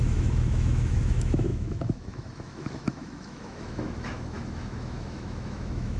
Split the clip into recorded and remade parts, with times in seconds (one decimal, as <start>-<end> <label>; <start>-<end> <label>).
0.0-6.0 remade